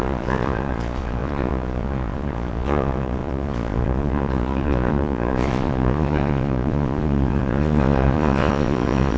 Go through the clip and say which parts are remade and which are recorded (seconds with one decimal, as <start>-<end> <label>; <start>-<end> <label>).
0.0-9.2 remade